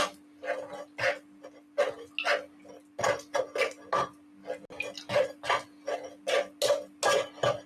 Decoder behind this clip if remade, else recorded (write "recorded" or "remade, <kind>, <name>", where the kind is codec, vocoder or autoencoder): recorded